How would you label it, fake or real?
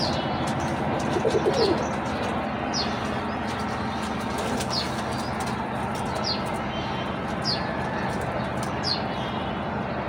real